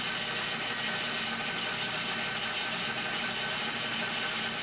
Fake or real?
real